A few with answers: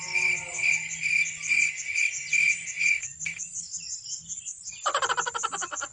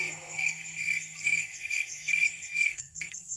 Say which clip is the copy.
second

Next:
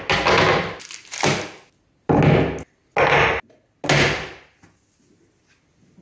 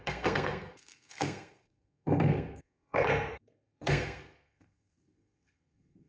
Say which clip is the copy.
second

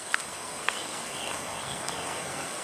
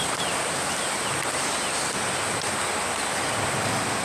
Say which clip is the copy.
first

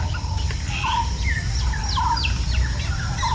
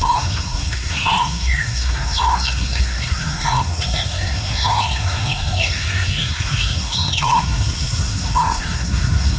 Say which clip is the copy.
second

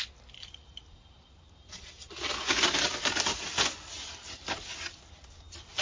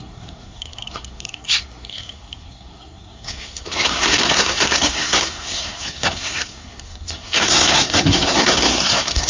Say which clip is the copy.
second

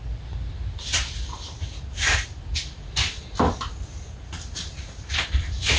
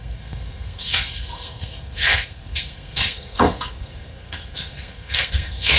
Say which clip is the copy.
second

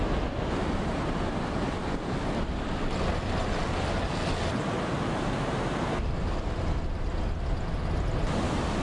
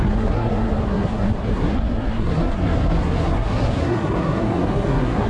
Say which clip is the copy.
second